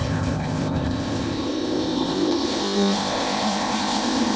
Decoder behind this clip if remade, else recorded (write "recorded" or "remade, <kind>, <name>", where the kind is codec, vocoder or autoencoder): remade, codec, ZipCodec